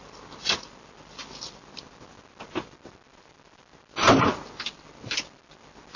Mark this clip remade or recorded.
recorded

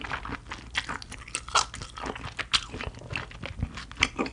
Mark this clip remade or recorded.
recorded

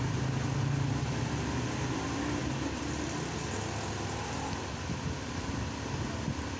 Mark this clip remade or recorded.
recorded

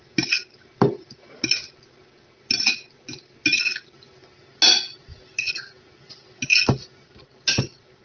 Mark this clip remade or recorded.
recorded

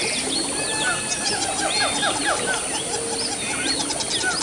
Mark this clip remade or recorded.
recorded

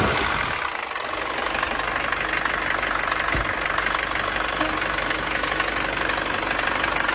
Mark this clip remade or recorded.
recorded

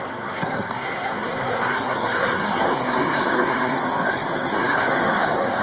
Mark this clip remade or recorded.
remade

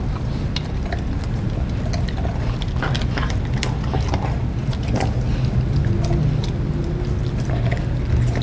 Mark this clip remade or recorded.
recorded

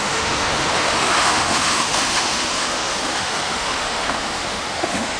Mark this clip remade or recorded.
remade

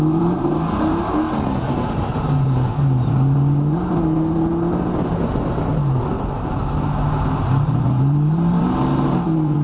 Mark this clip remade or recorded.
recorded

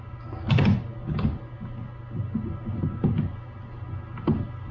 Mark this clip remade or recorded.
recorded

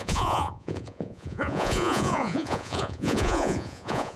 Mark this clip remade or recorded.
remade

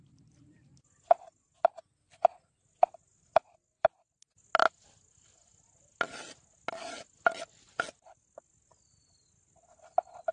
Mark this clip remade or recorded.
recorded